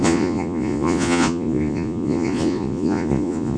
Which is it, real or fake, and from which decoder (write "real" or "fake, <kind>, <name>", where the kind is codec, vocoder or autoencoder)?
fake, vocoder, Vocos